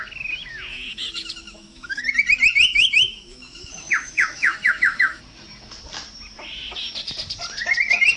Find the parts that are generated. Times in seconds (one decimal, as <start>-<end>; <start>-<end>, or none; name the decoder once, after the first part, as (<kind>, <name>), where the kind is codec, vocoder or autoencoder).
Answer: 0.7-2.0 (autoencoder, DAC-VAE); 2.7-5.2